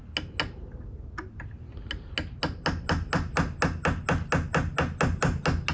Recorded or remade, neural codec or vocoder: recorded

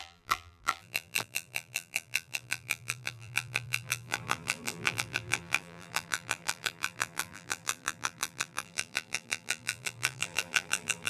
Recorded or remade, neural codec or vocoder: remade, vocoder, BigVGAN v2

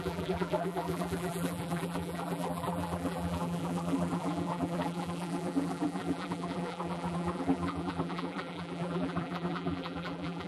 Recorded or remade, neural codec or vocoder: remade, vocoder, BigVGAN v2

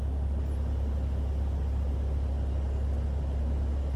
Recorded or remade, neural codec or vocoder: recorded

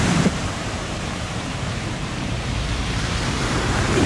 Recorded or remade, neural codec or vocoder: remade, vocoder, BigVGAN v2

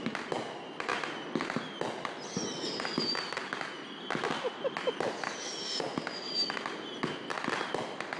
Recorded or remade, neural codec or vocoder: recorded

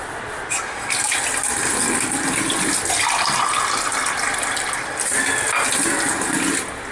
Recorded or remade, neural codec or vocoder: recorded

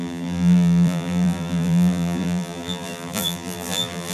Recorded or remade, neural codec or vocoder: remade, vocoder, BigVGAN v2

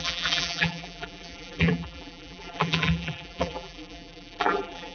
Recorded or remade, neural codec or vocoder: remade, vocoder, BigVGAN v2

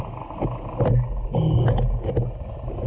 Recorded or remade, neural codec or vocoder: recorded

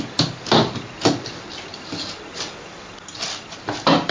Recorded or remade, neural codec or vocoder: recorded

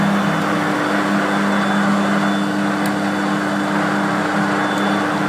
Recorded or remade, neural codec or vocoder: recorded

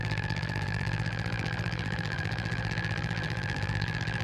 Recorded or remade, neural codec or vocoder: remade, vocoder, BigVGAN v2